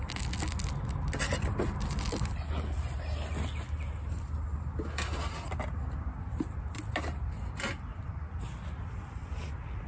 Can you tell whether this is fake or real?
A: real